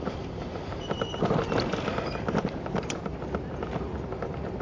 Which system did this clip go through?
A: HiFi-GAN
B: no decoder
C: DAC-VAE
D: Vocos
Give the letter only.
B